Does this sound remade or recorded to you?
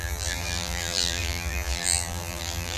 remade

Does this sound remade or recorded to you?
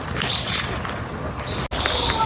recorded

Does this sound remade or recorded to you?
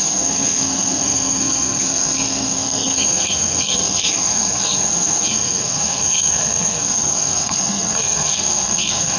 remade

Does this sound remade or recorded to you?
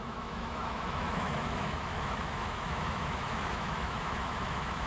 remade